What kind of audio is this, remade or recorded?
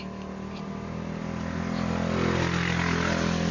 recorded